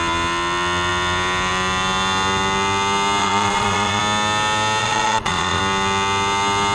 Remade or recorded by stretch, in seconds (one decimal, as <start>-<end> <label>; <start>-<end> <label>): 0.0-3.2 recorded; 3.2-4.0 remade; 4.0-4.8 recorded; 4.8-5.6 remade; 5.6-6.7 recorded